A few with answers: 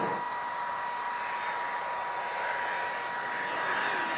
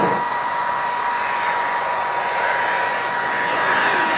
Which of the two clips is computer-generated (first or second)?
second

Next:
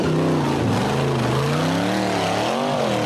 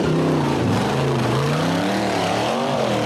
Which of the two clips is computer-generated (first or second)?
second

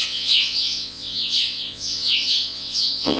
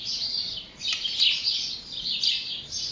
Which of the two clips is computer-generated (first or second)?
first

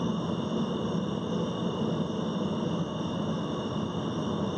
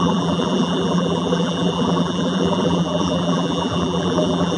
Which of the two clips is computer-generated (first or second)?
second